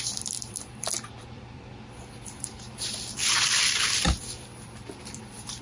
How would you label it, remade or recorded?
remade